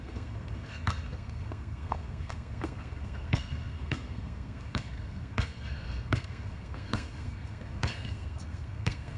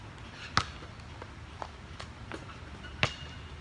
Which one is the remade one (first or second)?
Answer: first